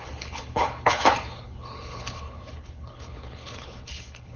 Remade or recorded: remade